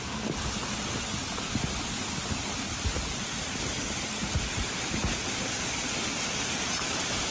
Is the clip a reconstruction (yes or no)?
no